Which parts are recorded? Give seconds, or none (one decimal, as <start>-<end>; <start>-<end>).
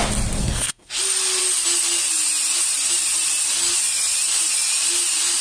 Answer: 0.0-0.4; 0.9-5.4